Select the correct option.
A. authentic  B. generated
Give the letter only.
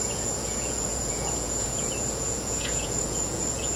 B